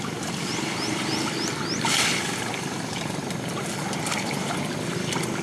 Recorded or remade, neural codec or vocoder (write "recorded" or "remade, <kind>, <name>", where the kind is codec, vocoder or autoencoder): recorded